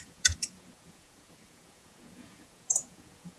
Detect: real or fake fake